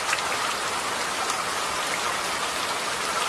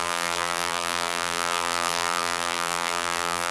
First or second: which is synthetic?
second